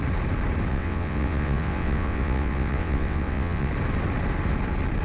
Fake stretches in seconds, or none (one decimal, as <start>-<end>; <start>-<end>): 0.7-3.7